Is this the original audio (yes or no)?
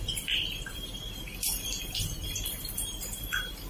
no